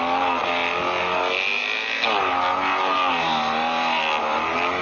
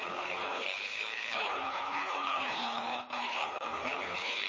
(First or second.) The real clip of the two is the first